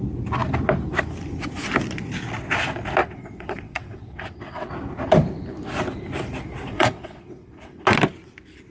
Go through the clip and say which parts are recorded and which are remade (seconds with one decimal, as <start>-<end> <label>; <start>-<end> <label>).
0.0-3.0 recorded; 3.0-4.7 remade; 4.7-6.7 recorded; 6.7-7.8 remade; 7.8-8.7 recorded

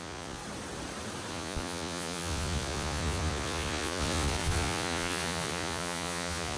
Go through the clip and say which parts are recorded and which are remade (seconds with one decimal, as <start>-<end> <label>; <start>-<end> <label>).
0.0-0.4 remade; 0.4-1.3 recorded; 1.3-6.6 remade

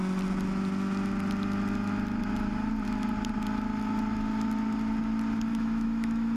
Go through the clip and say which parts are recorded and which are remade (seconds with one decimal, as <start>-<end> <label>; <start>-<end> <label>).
0.0-5.5 recorded; 5.5-6.4 remade

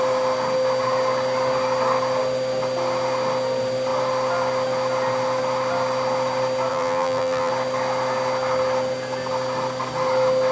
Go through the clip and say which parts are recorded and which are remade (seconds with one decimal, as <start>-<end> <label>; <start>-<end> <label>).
0.0-6.7 recorded; 6.7-7.5 remade; 7.5-10.5 recorded

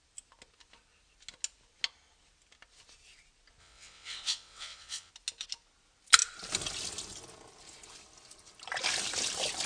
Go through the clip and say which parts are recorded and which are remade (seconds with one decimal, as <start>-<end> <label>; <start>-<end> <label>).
0.0-3.6 recorded; 3.6-5.1 remade; 5.1-9.7 recorded